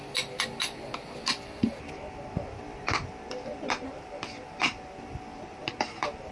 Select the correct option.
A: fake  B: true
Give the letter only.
A